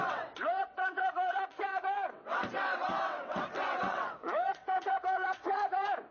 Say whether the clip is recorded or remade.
remade